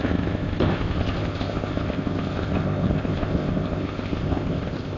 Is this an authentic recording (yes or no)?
no